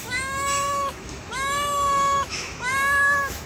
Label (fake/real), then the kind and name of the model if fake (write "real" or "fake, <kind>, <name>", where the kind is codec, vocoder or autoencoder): fake, autoencoder, DAC-VAE